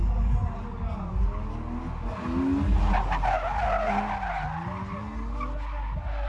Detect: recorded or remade recorded